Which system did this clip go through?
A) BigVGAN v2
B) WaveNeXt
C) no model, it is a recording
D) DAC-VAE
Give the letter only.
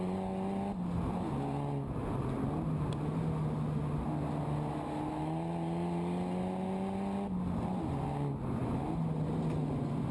C